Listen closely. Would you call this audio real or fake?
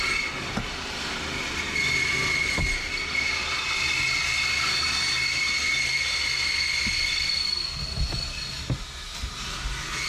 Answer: real